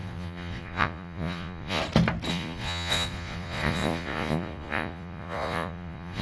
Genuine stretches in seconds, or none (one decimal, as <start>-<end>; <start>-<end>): 1.8-2.3